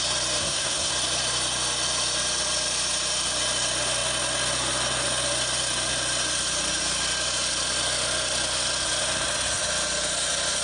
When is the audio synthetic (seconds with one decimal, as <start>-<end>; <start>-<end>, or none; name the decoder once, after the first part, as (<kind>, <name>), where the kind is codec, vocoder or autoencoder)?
0.4-0.9 (codec, SNAC)